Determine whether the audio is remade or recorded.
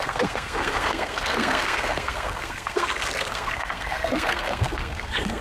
remade